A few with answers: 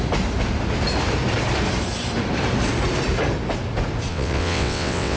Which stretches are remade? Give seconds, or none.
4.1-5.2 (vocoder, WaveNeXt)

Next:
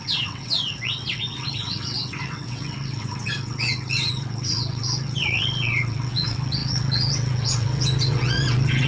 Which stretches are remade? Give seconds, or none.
0.0-8.9 (vocoder, WaveNeXt)

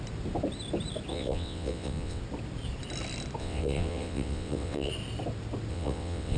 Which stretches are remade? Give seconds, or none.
1.1-2.2 (vocoder, WaveNeXt); 3.4-4.9; 5.7-6.4

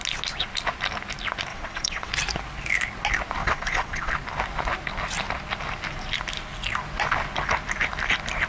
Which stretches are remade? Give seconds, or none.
1.5-2.1 (vocoder, WaveNeXt); 3.4-4.1

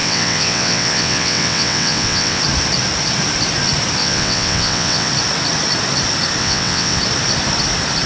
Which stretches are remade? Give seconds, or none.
0.0-2.4 (vocoder, WaveNeXt); 4.0-5.1; 6.4-7.0

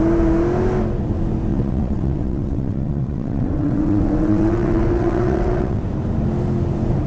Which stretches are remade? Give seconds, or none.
1.5-5.8 (vocoder, WaveNeXt)

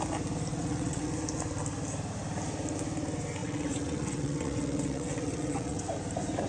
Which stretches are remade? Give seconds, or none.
0.5-1.1 (vocoder, WaveNeXt); 3.4-5.8